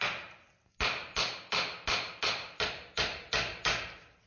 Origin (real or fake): real